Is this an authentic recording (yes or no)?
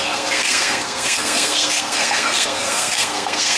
no